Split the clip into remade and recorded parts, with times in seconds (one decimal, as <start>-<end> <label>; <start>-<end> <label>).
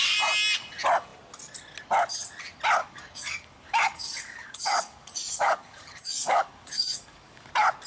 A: 0.0-2.8 recorded; 2.8-7.5 remade; 7.5-7.9 recorded